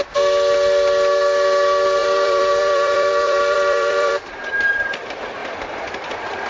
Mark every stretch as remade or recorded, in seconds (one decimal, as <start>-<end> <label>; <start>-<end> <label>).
0.0-2.0 recorded; 2.0-4.3 remade; 4.3-5.4 recorded; 5.4-6.5 remade